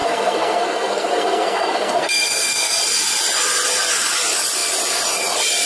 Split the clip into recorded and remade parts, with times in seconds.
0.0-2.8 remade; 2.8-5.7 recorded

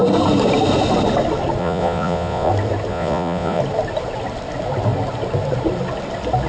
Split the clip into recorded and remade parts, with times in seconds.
0.0-1.6 recorded; 1.6-2.5 remade; 2.5-2.9 recorded; 2.9-3.6 remade; 3.6-6.5 recorded

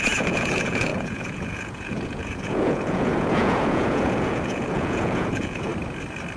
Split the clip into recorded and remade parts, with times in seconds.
0.0-5.7 remade; 5.7-6.4 recorded